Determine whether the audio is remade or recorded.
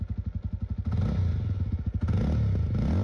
recorded